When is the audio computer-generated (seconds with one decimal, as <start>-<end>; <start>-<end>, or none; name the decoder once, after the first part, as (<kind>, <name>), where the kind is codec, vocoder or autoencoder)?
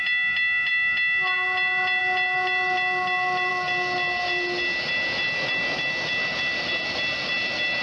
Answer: none